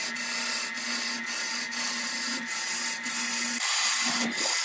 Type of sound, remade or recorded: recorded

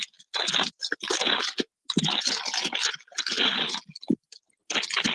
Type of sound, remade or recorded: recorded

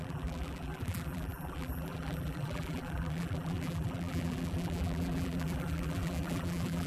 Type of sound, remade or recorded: remade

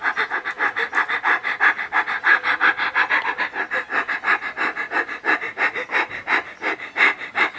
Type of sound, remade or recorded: recorded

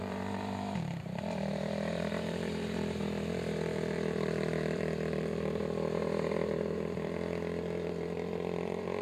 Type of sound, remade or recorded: remade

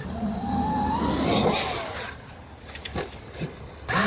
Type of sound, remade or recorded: recorded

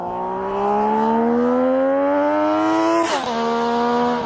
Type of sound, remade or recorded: recorded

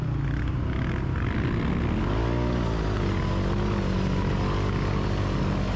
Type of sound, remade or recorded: recorded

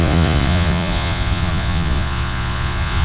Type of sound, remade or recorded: remade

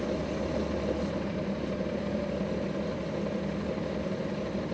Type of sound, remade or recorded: recorded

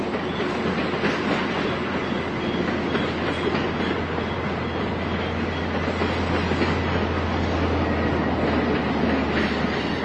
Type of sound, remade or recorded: recorded